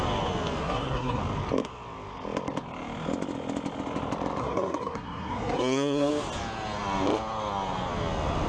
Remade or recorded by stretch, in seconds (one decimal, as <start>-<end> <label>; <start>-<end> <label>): 0.0-0.6 recorded; 0.6-1.2 remade; 1.2-4.4 recorded; 4.4-6.1 remade; 6.1-8.5 recorded